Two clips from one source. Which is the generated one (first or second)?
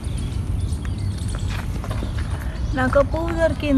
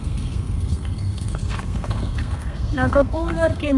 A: second